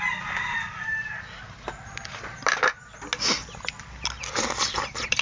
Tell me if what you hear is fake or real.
real